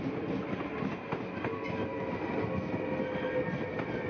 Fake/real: real